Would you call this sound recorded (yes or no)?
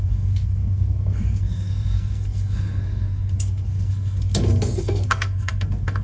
no